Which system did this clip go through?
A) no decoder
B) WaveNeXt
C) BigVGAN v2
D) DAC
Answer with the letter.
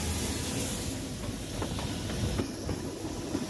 A